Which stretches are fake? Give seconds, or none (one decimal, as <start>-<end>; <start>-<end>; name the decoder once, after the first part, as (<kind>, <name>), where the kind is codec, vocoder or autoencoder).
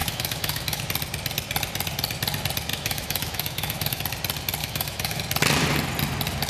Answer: 0.0-0.8 (autoencoder, DAC-VAE); 2.7-4.0; 4.6-5.2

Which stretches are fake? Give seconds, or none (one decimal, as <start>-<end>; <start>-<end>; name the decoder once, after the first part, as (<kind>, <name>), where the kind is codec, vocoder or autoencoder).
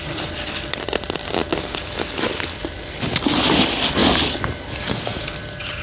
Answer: none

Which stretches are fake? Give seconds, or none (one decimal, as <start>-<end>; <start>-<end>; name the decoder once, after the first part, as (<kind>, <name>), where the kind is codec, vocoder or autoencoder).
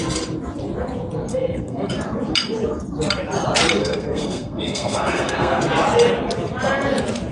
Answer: 1.3-1.9 (codec, SNAC); 3.8-5.6